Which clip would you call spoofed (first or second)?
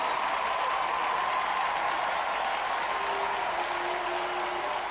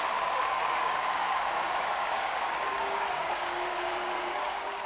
second